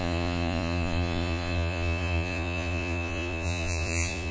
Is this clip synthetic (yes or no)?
yes